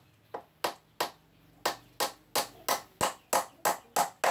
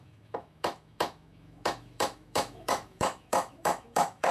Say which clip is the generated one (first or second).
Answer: second